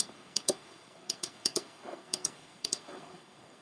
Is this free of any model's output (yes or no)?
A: no